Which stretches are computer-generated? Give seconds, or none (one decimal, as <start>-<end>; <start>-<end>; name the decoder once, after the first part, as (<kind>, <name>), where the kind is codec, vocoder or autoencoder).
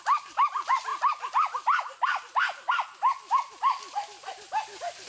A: none